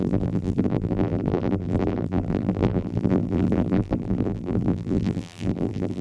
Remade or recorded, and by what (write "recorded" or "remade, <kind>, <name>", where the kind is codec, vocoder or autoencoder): remade, vocoder, BigVGAN v2